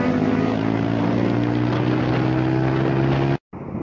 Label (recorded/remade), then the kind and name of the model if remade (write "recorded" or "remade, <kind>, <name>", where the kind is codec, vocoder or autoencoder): recorded